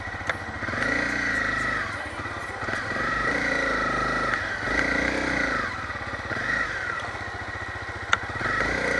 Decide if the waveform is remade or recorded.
recorded